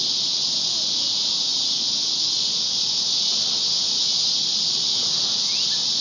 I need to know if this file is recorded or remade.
recorded